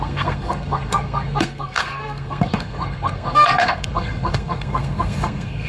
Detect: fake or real fake